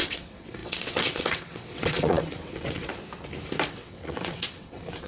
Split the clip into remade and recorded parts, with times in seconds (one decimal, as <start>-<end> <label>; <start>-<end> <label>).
0.0-2.9 remade; 2.9-3.7 recorded; 3.7-5.1 remade